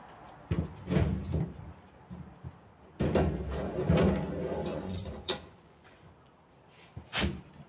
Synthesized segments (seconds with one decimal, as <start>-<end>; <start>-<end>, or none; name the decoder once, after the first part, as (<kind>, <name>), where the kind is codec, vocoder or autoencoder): 4.7-6.1 (vocoder, Vocos)